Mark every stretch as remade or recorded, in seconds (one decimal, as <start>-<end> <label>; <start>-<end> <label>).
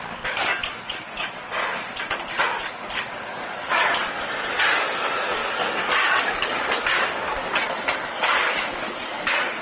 0.0-1.2 remade; 1.2-2.4 recorded; 2.4-3.9 remade; 3.9-4.5 recorded; 4.5-9.6 remade